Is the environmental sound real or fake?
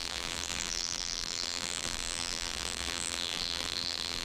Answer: fake